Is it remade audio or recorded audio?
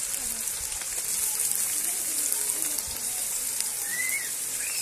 recorded